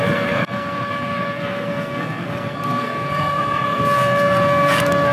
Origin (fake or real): fake